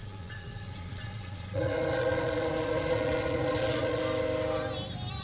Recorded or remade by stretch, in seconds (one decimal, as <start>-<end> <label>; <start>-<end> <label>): 0.0-4.0 remade; 4.0-5.2 recorded